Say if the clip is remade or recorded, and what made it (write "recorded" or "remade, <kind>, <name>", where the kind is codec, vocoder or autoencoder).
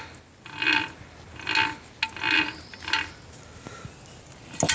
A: recorded